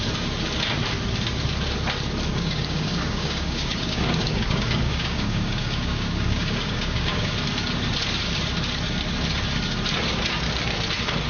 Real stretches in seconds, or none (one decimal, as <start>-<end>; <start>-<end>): 0.0-2.3; 7.3-11.3